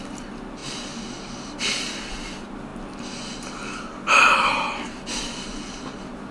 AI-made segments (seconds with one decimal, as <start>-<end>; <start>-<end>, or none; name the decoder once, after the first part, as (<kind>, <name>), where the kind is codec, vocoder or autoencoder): none